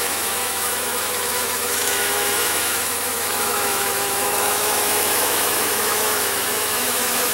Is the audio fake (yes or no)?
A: yes